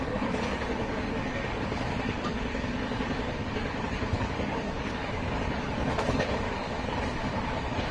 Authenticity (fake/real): fake